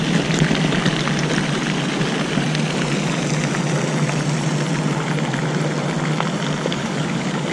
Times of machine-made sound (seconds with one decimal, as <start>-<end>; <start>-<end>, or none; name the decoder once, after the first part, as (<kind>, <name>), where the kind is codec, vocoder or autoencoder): 6.7-7.5 (codec, DAC)